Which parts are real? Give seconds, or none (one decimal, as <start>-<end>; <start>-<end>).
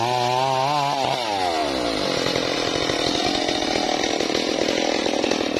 0.0-5.6